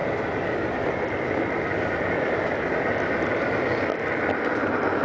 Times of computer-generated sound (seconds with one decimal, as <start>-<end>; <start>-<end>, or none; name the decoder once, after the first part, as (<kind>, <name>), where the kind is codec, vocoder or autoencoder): none